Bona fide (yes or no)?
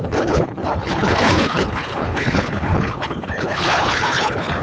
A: no